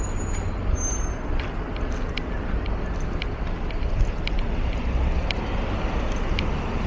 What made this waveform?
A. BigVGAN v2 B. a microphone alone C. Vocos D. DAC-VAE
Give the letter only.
B